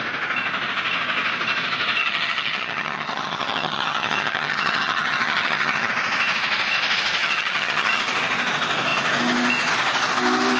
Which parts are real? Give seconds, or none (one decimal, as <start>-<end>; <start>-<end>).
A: 0.0-2.0; 5.9-7.2; 8.0-10.6